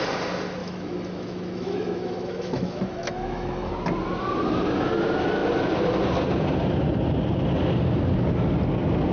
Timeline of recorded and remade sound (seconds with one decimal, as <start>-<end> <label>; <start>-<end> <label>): 0.0-0.6 recorded; 0.6-3.7 remade; 3.7-9.1 recorded

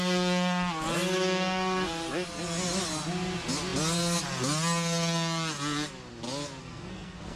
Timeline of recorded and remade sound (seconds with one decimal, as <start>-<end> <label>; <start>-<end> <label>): 0.0-6.6 recorded; 6.6-7.4 remade

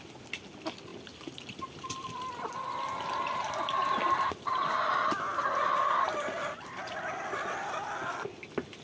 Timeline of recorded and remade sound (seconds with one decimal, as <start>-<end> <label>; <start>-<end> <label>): 0.0-8.8 recorded